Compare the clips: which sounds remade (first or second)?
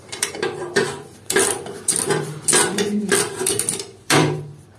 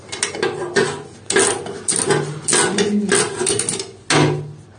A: first